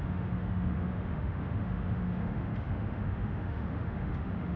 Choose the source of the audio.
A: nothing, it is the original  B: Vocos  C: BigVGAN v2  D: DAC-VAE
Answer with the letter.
D